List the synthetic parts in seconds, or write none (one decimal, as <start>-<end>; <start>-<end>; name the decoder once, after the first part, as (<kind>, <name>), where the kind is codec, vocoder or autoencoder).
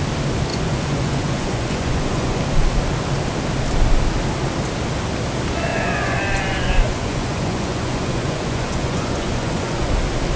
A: 0.5-2.4 (vocoder, Vocos); 5.7-9.9